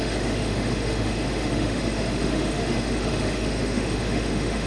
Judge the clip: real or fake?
fake